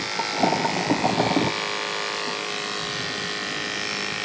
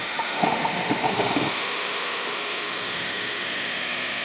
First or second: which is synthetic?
second